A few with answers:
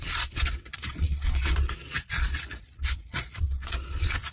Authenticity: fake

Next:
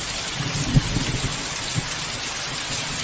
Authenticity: real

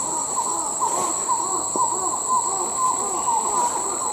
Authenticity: real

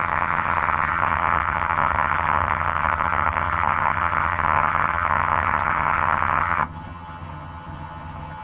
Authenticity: fake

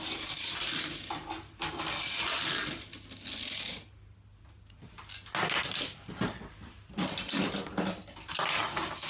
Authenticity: real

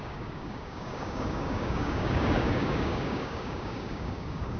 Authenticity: fake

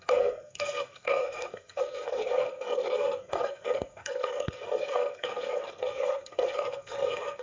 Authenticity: fake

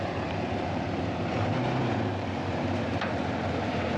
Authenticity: fake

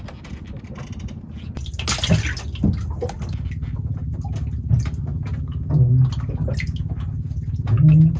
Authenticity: real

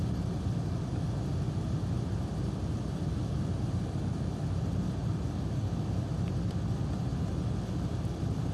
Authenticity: real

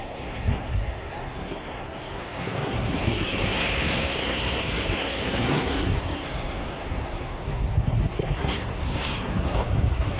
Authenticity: fake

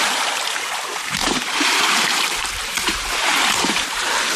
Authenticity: fake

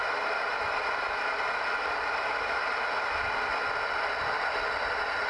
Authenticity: real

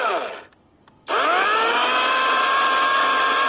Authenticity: real